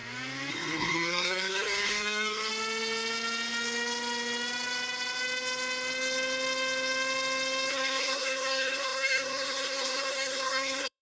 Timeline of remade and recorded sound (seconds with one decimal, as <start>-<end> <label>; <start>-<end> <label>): 0.0-0.5 recorded; 0.5-2.5 remade; 2.5-7.7 recorded; 7.7-11.0 remade